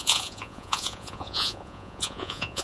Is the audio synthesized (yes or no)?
yes